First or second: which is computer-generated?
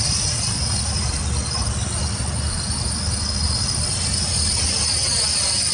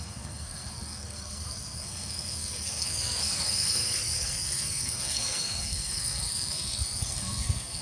second